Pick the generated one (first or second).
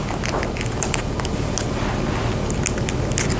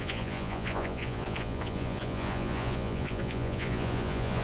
second